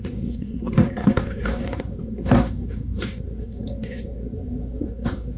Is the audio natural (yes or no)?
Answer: no